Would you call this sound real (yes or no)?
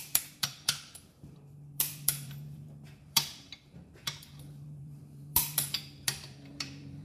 no